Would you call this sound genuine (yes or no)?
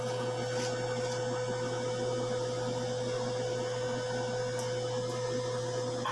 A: yes